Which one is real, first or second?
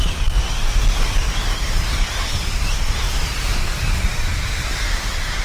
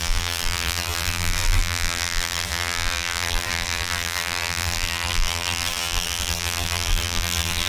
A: first